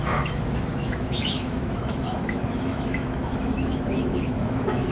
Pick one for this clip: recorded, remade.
remade